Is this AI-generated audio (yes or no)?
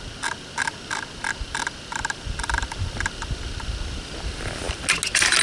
no